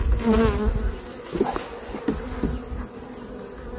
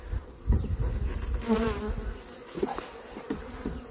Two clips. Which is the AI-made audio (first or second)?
second